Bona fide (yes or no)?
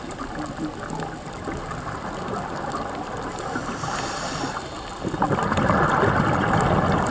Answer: yes